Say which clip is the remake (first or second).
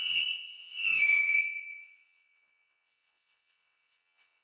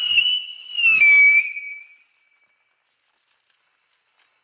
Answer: first